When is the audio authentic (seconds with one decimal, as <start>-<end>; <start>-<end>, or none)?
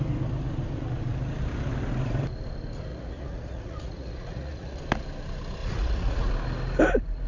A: 0.0-2.9; 4.8-5.6; 6.3-7.3